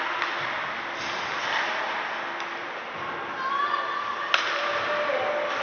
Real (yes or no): yes